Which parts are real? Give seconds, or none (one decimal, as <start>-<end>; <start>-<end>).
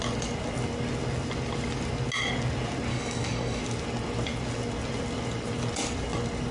0.0-2.9; 3.6-6.5